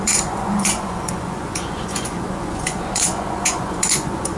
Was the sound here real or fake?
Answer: fake